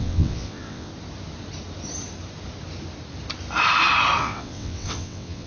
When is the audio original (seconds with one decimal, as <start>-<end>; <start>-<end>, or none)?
0.9-4.2